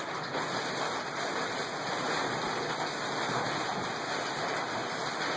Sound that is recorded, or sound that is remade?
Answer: recorded